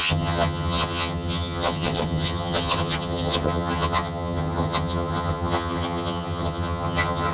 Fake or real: fake